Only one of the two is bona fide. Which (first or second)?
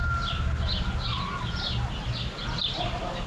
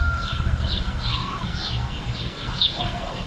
first